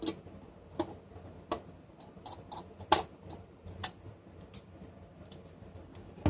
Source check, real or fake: real